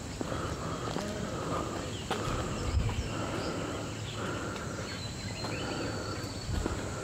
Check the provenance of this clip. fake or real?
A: real